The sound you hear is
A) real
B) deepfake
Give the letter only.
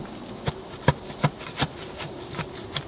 A